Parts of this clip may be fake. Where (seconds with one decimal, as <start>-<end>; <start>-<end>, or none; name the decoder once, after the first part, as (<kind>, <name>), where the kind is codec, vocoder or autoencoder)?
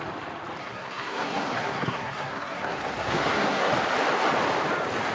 0.6-3.7 (codec, SNAC)